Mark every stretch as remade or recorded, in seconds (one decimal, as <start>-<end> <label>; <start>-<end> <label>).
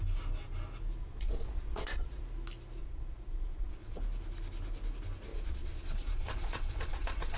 0.0-1.0 recorded; 1.0-2.2 remade; 2.2-2.8 recorded; 2.8-4.0 remade; 4.0-5.3 recorded; 5.3-7.4 remade